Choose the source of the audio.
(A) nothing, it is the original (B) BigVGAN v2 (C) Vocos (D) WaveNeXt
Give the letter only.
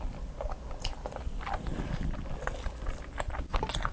A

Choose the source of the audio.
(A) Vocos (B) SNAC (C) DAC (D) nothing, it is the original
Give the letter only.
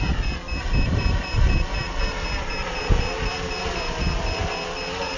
D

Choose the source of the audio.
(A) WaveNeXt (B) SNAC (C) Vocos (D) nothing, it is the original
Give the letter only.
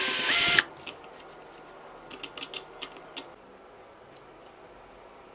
D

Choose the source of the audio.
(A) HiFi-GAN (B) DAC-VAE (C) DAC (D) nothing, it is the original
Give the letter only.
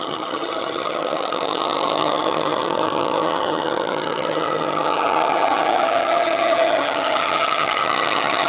A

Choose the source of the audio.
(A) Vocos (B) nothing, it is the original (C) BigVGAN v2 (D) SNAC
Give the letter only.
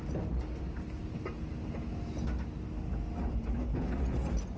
B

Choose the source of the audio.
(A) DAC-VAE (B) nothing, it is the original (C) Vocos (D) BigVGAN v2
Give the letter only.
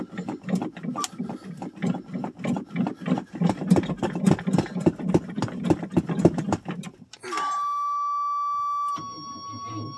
B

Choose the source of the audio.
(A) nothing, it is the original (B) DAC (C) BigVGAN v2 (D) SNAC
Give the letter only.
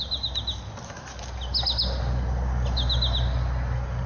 A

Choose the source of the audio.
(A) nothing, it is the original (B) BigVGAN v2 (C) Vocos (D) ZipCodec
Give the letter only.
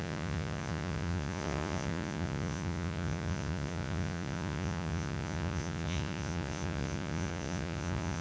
C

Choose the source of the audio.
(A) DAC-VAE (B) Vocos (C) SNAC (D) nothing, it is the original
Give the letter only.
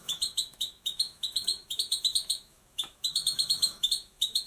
A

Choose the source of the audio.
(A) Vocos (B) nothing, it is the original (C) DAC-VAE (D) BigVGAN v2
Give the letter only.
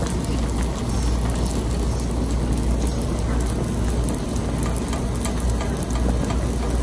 B